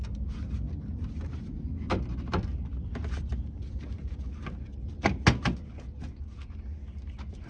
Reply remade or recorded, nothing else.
recorded